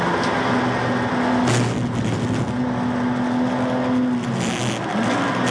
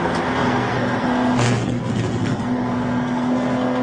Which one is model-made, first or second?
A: second